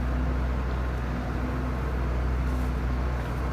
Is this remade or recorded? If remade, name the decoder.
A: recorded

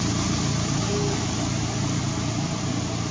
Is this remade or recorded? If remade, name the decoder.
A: recorded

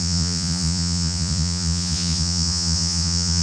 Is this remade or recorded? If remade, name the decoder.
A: remade, vocoder, Vocos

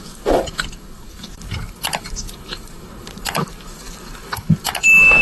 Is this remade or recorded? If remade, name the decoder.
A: remade, codec, DAC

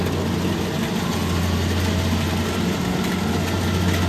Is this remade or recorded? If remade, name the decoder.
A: recorded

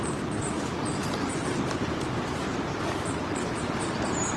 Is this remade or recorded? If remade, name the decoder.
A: recorded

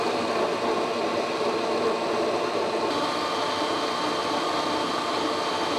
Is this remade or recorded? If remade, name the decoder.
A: recorded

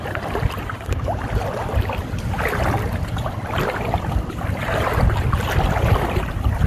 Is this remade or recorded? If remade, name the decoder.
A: recorded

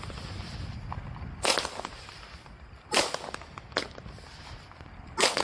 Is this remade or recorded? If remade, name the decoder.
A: recorded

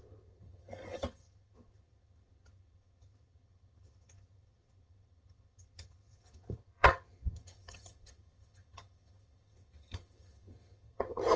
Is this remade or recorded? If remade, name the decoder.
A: remade, vocoder, HiFi-GAN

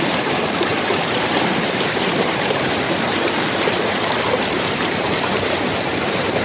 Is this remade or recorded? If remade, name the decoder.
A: remade, vocoder, BigVGAN v2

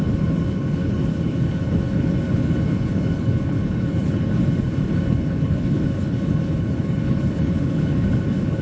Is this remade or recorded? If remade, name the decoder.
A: remade, codec, HILCodec